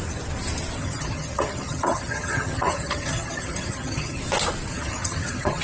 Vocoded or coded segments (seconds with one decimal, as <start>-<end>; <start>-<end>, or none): 0.8-4.2; 4.7-5.6